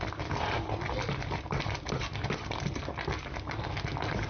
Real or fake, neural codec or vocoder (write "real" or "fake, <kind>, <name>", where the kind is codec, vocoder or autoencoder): real